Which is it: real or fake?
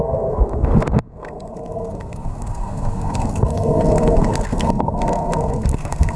fake